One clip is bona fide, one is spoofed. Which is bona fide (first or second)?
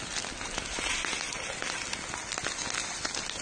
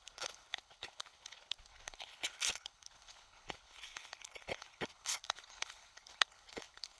first